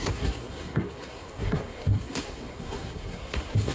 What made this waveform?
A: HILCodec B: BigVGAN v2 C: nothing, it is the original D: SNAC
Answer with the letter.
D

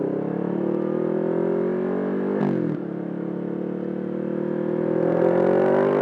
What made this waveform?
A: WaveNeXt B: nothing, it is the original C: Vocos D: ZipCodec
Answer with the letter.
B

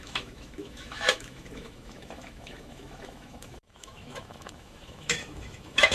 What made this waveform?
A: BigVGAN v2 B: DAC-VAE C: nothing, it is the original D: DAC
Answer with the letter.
B